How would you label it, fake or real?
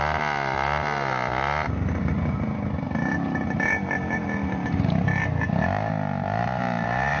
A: real